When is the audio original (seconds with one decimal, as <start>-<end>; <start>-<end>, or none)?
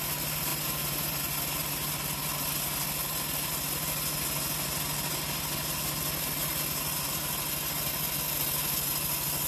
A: 0.0-9.5